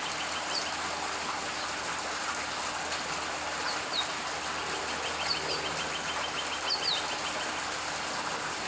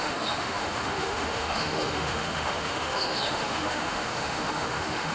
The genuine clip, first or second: first